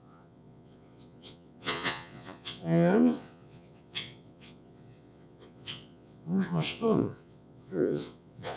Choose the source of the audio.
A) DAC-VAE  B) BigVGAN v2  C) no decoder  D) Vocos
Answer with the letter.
D